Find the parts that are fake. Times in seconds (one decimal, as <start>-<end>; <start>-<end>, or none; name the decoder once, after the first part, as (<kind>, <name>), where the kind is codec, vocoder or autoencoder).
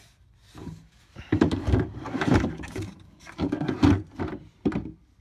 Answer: 0.6-3.7 (codec, DAC)